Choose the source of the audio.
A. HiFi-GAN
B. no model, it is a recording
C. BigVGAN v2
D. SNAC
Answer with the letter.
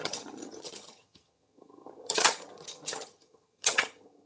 A